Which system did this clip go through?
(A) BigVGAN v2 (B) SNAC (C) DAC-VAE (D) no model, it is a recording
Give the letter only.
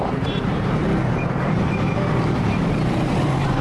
A